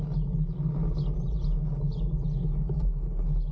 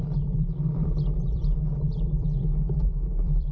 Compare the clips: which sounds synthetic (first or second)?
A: second